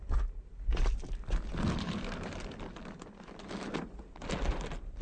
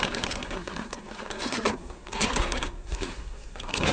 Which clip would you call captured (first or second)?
first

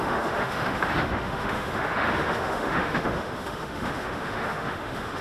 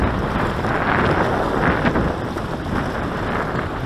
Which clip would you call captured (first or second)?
second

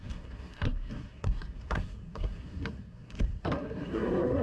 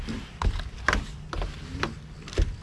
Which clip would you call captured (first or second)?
second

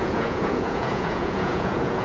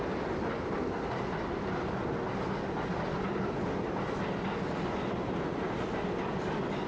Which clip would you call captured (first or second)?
second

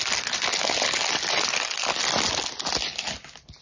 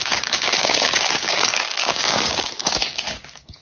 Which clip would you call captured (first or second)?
first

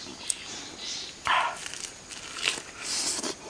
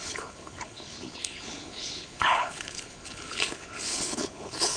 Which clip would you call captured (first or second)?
first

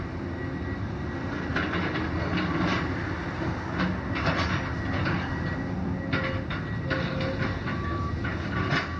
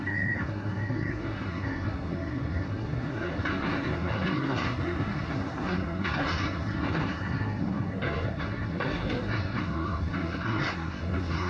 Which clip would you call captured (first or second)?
first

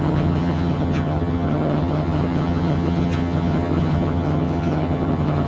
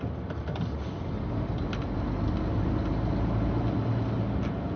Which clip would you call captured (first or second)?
second